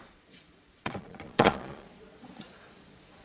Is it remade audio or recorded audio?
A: remade